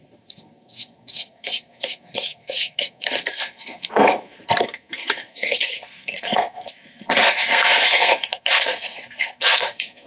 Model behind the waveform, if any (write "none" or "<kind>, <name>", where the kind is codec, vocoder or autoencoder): codec, SNAC